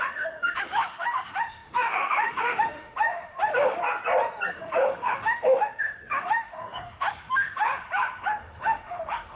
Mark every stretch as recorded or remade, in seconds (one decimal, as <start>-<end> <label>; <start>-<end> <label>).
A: 0.0-3.8 remade; 3.8-4.5 recorded; 4.5-9.4 remade